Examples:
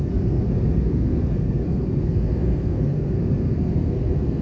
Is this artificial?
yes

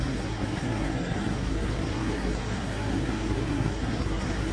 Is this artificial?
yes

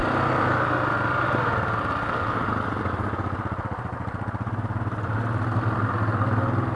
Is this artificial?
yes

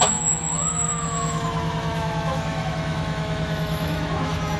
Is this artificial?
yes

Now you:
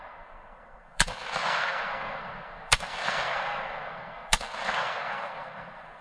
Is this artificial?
yes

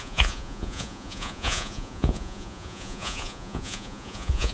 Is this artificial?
yes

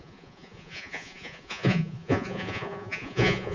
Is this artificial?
yes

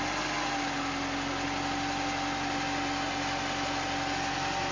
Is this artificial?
no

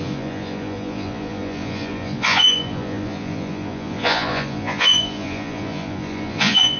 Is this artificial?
yes